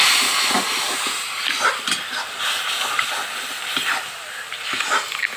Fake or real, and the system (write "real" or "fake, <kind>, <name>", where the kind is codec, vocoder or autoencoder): real